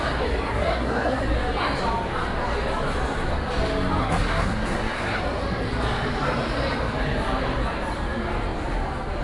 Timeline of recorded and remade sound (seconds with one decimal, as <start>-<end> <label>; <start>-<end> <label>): 0.0-0.5 recorded; 0.5-1.2 remade; 1.2-4.0 recorded; 4.0-5.2 remade; 5.2-9.2 recorded